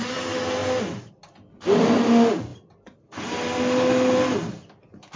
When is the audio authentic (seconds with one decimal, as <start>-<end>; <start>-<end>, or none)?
0.0-5.2